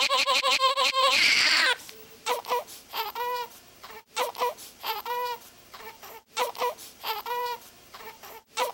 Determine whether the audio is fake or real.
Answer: fake